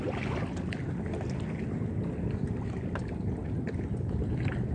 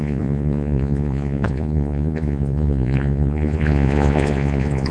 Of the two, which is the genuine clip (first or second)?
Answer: first